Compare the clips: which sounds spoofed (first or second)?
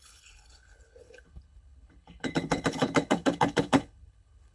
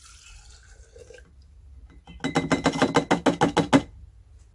first